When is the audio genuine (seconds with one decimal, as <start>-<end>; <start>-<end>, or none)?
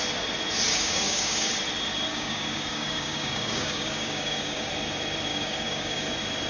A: 0.0-0.7; 1.5-2.1; 4.7-5.3; 6.1-6.5